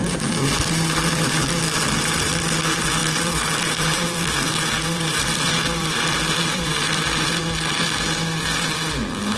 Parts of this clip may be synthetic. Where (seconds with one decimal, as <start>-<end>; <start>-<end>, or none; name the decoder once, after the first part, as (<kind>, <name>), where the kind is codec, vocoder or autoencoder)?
0.0-1.4 (vocoder, BigVGAN v2); 3.0-7.4